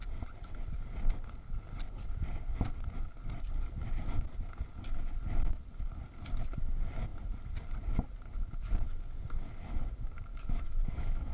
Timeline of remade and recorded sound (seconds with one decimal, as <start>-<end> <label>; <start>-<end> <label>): 0.0-10.3 recorded; 10.3-11.3 remade